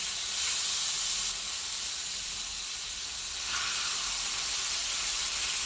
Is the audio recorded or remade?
recorded